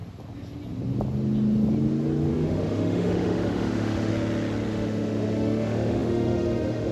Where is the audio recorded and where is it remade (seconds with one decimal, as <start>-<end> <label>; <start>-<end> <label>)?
0.0-2.3 recorded; 2.3-4.1 remade; 4.1-4.7 recorded; 4.7-6.9 remade